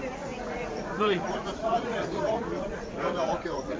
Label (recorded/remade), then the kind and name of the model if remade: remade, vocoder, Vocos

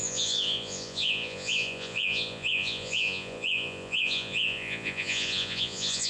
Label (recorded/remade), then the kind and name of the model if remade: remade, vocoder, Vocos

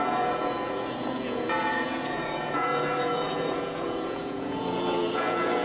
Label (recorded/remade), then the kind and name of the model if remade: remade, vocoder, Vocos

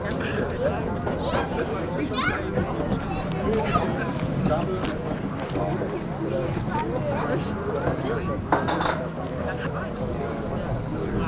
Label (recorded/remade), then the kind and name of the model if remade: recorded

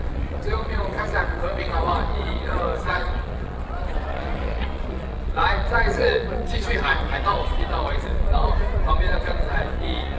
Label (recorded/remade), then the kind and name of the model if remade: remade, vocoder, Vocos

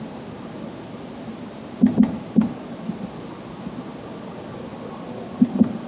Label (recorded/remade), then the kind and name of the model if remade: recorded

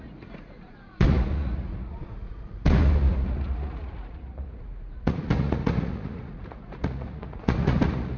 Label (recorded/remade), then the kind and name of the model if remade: remade, vocoder, Vocos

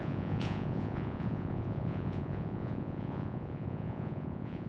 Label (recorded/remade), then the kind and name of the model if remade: remade, vocoder, Vocos